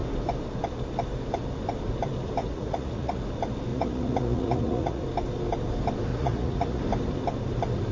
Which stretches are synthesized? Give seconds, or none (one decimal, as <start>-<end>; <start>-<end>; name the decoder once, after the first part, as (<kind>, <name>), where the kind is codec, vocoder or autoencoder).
2.4-3.2 (vocoder, Vocos); 3.7-5.0; 6.1-6.8